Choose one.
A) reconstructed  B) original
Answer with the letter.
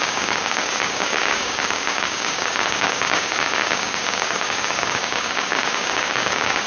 A